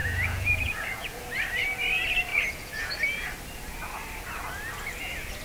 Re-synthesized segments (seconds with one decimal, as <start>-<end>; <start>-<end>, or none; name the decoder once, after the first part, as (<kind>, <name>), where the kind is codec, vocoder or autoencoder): 0.0-1.2 (vocoder, Vocos); 2.3-2.9